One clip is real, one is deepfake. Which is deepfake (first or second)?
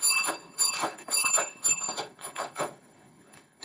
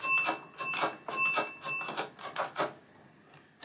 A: first